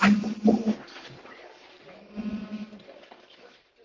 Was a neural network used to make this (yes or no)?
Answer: yes